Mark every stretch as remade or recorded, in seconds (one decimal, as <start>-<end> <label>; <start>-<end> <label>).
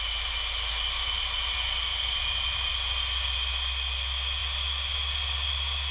0.0-5.9 recorded